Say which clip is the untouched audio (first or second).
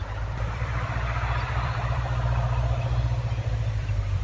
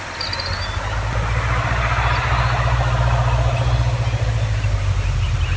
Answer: second